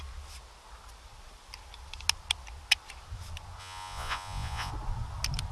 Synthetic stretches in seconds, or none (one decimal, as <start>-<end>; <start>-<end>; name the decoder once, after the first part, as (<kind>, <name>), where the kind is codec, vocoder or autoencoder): 3.6-4.7 (vocoder, Vocos)